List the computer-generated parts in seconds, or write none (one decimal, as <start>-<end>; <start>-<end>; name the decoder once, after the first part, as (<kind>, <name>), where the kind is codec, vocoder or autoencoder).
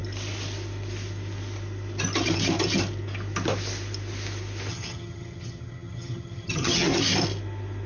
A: 4.7-6.9 (vocoder, HiFi-GAN)